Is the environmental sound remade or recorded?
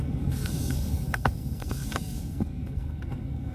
remade